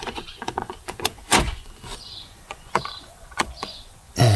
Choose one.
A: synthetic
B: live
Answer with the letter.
A